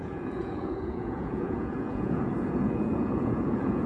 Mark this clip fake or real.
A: fake